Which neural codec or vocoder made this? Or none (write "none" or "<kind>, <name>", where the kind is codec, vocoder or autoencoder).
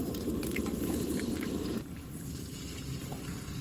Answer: vocoder, BigVGAN v2